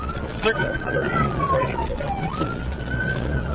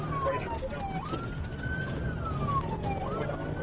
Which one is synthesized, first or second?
first